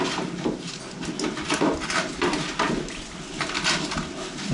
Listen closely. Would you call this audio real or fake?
real